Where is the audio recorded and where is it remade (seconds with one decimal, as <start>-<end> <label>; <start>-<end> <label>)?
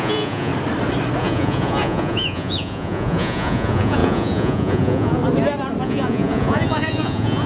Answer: 0.0-0.5 remade; 0.5-1.2 recorded; 1.2-5.2 remade; 5.2-5.8 recorded; 5.8-7.5 remade